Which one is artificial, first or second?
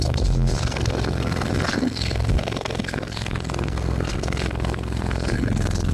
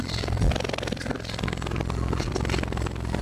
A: first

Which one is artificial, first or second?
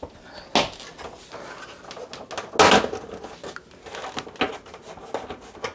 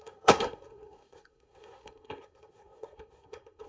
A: second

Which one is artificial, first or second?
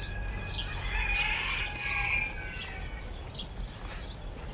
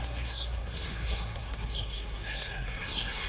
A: second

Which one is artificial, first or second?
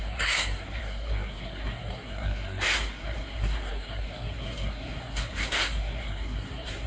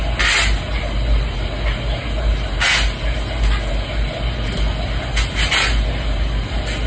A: first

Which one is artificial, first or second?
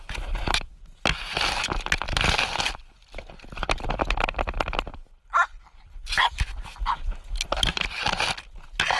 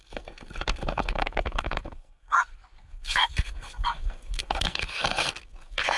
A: second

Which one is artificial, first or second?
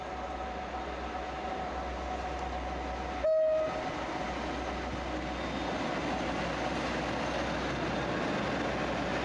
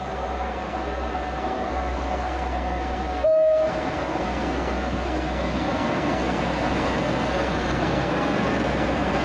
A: second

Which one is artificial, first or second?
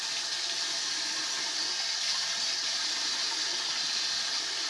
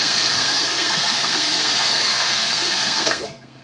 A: second